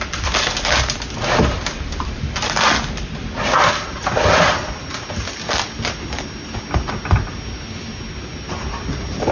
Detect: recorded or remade recorded